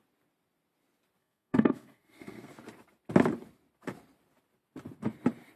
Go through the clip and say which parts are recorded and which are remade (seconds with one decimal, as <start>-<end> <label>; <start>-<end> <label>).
0.0-1.2 recorded; 1.2-2.5 remade; 2.5-5.6 recorded